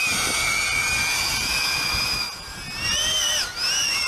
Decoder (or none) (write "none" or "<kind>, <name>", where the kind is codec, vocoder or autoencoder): none